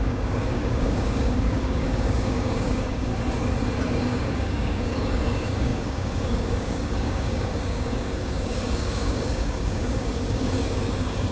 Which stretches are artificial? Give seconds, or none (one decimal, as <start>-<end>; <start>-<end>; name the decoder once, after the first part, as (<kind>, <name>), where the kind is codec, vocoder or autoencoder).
0.0-3.1 (codec, DAC); 3.9-11.3